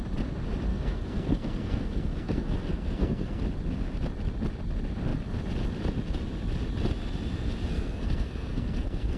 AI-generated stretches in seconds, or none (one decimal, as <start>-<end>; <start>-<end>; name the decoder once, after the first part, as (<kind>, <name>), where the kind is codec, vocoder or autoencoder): 0.7-3.4 (codec, SNAC); 7.7-9.2